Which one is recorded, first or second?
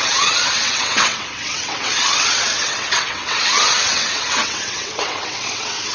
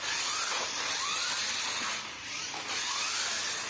second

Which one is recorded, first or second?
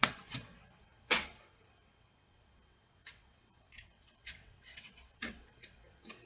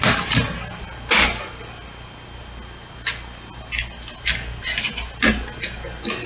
second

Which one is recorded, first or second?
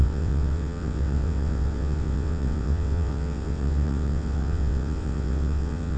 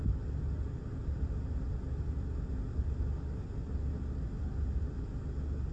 second